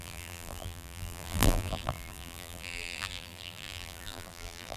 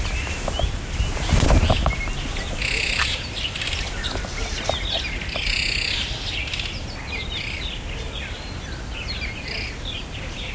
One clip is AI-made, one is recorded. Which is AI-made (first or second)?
first